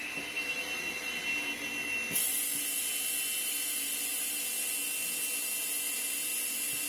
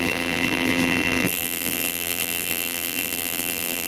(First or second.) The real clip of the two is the first